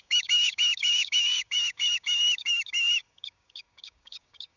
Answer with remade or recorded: remade